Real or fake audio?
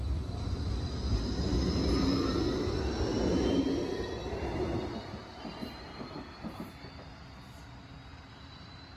real